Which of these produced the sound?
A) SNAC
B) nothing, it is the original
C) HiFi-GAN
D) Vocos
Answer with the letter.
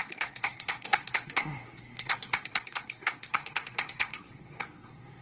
A